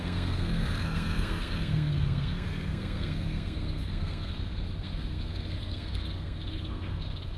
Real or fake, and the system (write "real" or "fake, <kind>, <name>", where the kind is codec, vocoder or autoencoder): fake, codec, SNAC